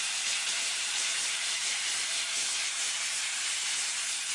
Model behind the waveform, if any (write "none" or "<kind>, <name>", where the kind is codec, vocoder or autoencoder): vocoder, BigVGAN v2